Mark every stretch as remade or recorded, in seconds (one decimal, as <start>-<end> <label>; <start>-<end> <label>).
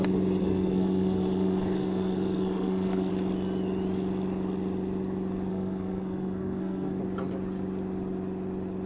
0.0-0.4 recorded; 0.4-3.1 remade; 3.1-5.5 recorded; 5.5-7.0 remade; 7.0-8.9 recorded